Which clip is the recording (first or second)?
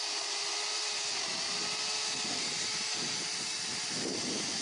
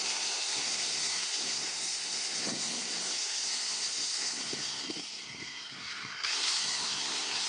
first